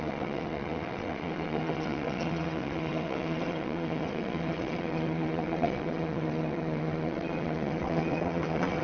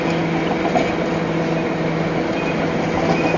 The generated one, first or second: first